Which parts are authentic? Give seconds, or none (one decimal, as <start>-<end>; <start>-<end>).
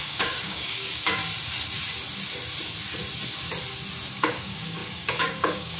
1.2-4.1